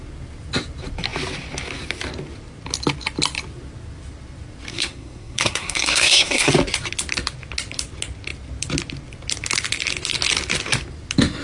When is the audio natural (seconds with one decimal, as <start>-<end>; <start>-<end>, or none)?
0.0-4.7; 6.5-11.4